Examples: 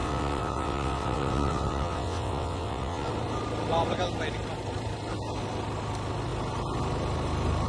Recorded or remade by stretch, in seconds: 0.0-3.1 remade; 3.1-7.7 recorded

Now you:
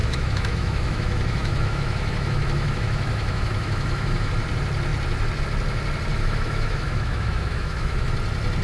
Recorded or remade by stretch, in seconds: 0.0-4.3 remade; 4.3-6.1 recorded; 6.1-8.1 remade; 8.1-8.6 recorded

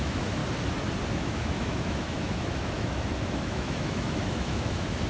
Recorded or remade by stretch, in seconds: 0.0-0.4 remade; 0.4-1.1 recorded; 1.1-5.1 remade

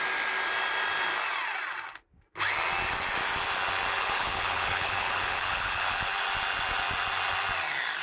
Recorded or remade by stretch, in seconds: 0.0-4.0 recorded; 4.0-6.0 remade; 6.0-8.0 recorded

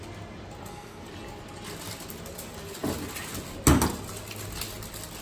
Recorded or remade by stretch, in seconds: 0.0-0.6 recorded; 0.6-1.1 remade; 1.1-5.2 recorded

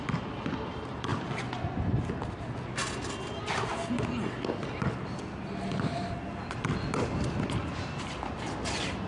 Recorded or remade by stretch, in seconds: 0.0-9.1 recorded

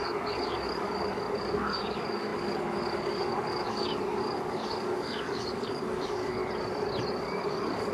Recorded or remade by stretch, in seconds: 0.0-6.4 remade; 6.4-7.2 recorded; 7.2-7.9 remade

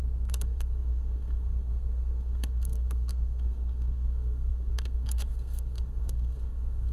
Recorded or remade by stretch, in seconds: 0.0-6.9 remade